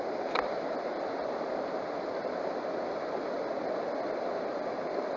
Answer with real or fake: real